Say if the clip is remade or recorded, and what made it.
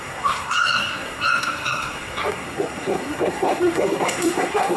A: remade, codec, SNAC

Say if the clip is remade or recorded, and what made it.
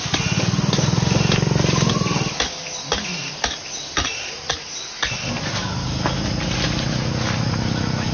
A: recorded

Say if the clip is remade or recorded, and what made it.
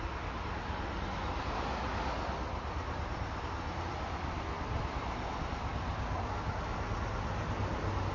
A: recorded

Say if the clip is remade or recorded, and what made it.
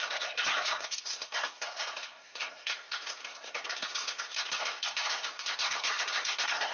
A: remade, codec, SNAC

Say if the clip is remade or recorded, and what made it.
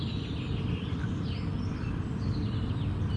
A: remade, vocoder, BigVGAN v2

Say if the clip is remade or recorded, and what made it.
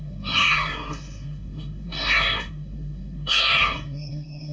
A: remade, codec, SNAC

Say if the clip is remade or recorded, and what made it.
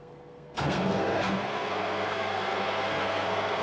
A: remade, codec, SNAC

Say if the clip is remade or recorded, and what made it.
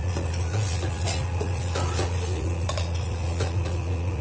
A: remade, vocoder, Vocos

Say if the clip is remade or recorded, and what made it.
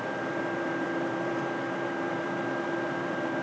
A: remade, vocoder, BigVGAN v2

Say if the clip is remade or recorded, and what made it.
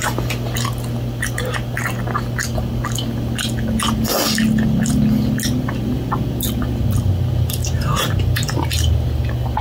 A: recorded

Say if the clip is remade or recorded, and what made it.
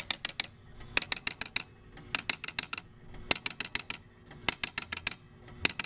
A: recorded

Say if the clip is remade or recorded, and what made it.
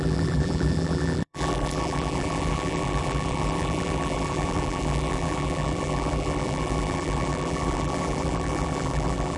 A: remade, vocoder, BigVGAN v2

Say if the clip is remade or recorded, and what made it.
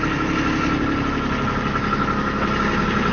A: recorded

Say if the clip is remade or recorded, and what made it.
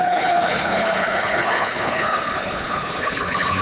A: remade, codec, HILCodec